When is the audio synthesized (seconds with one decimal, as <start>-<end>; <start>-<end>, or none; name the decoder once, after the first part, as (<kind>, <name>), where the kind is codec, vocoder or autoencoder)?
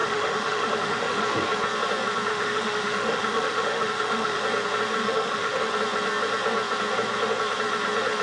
0.0-1.2 (autoencoder, DAC-VAE); 2.3-4.4; 5.0-5.7